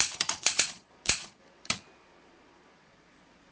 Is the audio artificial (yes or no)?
yes